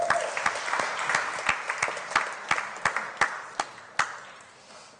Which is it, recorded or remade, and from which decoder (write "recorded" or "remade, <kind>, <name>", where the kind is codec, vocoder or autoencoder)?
recorded